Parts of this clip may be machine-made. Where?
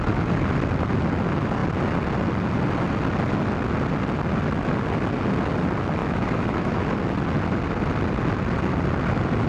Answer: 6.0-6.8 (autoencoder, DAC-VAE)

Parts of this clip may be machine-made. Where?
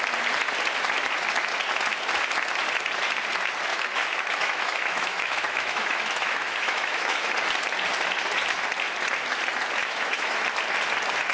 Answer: 3.7-7.3 (autoencoder, DAC-VAE); 9.8-10.4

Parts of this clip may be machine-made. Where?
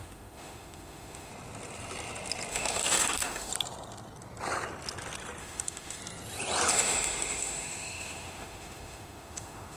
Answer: 0.0-1.3 (autoencoder, DAC-VAE); 2.5-3.5; 5.4-6.0; 6.7-9.8